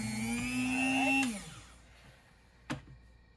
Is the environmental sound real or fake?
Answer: real